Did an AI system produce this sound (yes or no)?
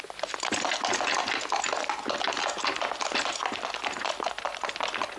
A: no